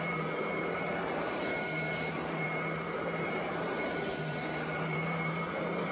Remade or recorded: remade